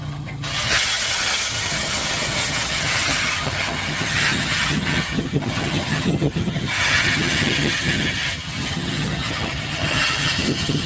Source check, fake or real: fake